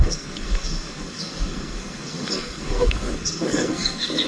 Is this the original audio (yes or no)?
no